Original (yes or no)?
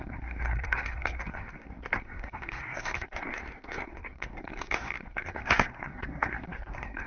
no